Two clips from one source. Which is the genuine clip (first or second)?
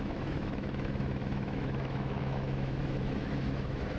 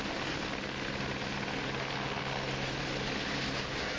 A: second